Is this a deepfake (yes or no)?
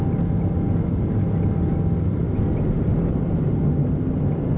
no